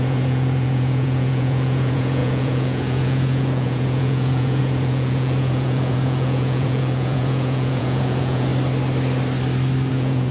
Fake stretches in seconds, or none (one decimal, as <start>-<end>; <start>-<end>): 0.0-8.5; 9.9-10.3